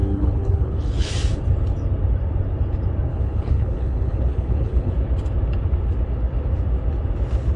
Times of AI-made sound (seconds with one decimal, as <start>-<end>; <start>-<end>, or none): 0.0-1.1; 3.1-4.9